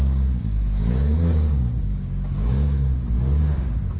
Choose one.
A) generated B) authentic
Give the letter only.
A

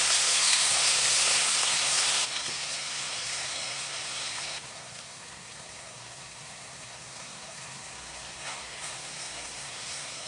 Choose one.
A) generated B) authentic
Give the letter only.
A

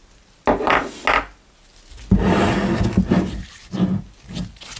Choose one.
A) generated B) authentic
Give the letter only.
B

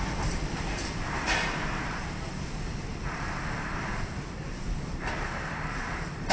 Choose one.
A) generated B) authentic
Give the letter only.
A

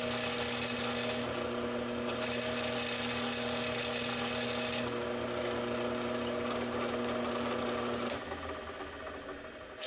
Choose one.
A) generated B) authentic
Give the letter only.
B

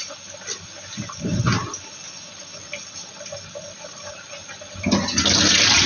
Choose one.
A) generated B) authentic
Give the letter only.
B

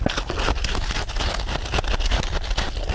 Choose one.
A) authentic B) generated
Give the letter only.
A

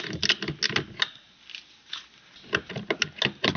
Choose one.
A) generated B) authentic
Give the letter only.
B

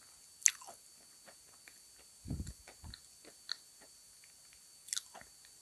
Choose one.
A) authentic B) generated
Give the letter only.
A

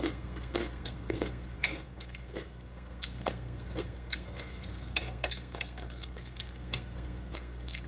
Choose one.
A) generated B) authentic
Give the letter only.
A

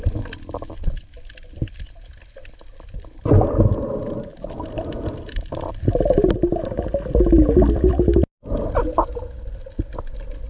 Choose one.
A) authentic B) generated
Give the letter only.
A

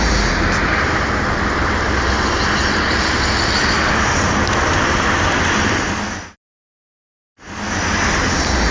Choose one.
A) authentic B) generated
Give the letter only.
A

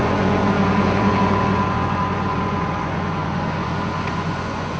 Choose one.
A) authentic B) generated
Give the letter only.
B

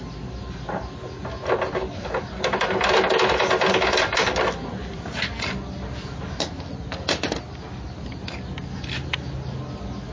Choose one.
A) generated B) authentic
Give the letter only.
B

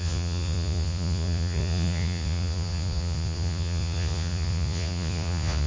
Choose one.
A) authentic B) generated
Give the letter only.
B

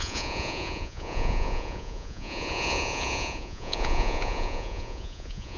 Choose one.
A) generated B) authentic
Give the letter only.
A